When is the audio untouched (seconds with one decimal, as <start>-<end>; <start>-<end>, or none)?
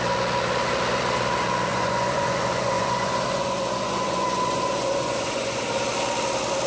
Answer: 0.0-1.7; 5.7-6.7